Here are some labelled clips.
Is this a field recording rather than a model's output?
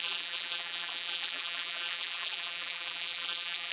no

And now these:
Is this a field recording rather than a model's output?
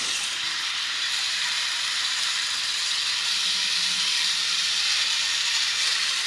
no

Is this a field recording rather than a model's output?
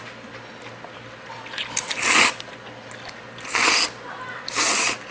yes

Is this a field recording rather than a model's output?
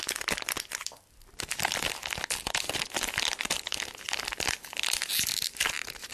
yes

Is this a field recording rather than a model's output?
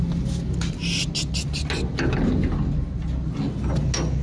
yes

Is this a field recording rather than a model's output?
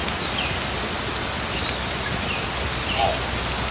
yes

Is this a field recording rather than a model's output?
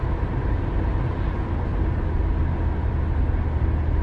yes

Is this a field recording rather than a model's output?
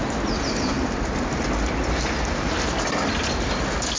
yes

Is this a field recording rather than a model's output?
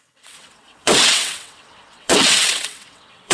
no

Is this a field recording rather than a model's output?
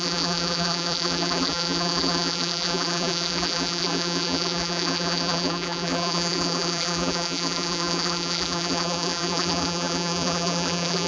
no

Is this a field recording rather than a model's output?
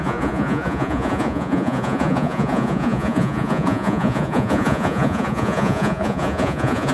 no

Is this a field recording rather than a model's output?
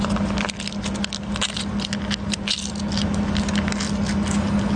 yes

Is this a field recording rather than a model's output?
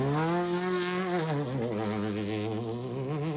yes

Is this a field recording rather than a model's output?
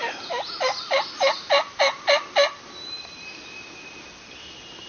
yes